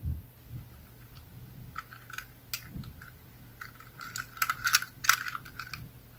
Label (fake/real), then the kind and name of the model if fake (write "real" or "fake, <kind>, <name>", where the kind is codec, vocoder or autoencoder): real